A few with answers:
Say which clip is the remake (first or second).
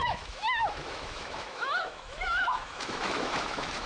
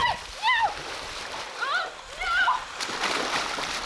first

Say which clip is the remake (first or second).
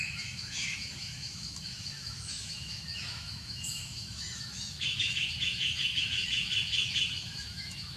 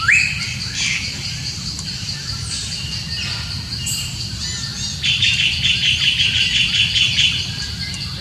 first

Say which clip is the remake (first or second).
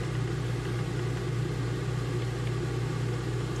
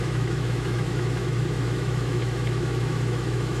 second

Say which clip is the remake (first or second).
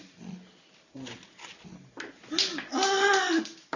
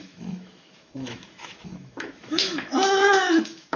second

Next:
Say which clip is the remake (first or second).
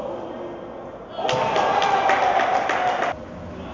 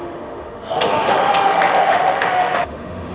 second